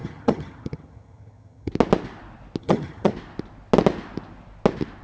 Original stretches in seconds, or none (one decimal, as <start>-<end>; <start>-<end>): 1.7-2.6; 3.1-5.0